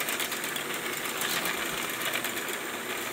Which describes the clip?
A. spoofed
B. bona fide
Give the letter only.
B